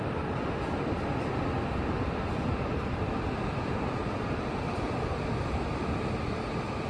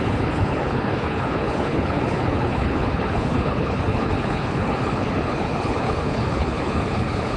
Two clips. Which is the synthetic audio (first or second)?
second